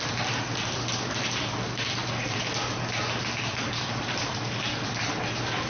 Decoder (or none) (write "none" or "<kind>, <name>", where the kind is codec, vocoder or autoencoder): none